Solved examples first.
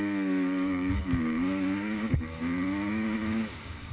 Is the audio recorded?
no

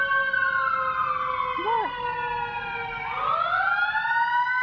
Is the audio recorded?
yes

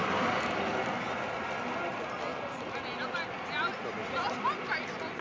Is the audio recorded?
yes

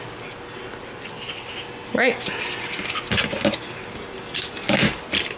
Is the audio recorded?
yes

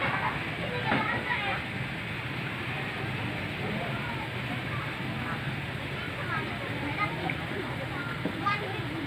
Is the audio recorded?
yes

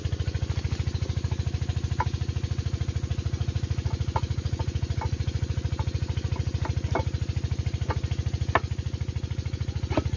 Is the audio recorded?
yes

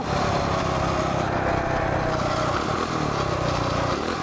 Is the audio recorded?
yes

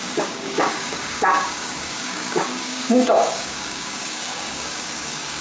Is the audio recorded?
no